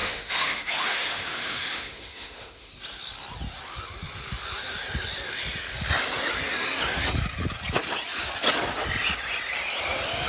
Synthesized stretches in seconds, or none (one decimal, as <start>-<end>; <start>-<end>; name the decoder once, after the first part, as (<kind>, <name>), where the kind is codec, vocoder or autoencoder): 0.0-2.7 (autoencoder, DAC-VAE)